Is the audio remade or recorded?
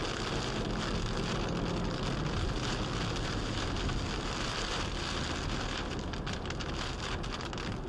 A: recorded